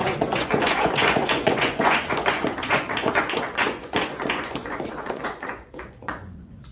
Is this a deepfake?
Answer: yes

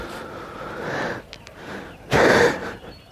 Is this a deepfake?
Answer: no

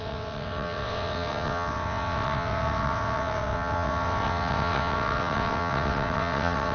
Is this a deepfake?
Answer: yes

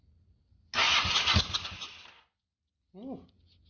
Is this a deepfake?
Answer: no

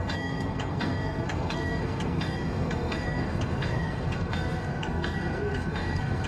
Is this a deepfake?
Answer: yes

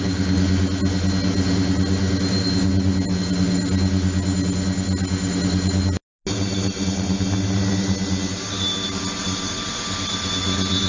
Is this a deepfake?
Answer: no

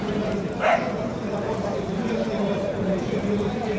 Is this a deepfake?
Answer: yes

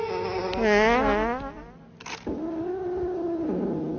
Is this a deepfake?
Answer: no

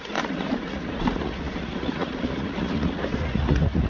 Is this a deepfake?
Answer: yes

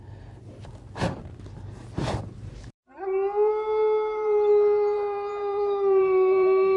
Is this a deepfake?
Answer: yes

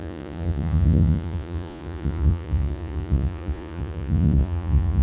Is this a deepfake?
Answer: yes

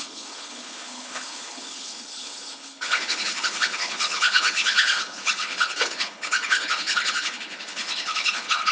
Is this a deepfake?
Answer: yes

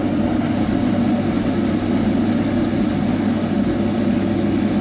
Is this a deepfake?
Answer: no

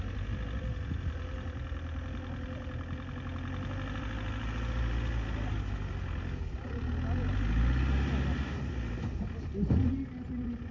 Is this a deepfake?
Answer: no